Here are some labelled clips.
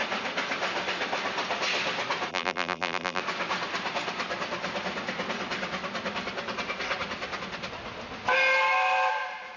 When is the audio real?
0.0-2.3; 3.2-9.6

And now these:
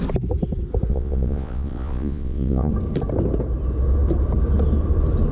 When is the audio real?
0.0-0.9; 2.7-5.3